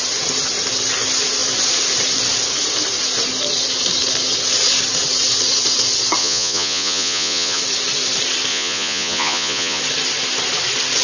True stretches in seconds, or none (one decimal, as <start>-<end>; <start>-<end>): 0.0-6.2; 7.6-8.5; 9.8-11.0